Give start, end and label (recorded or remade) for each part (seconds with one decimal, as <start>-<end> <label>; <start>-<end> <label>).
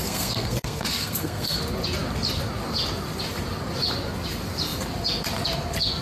0.0-1.6 remade; 1.6-6.0 recorded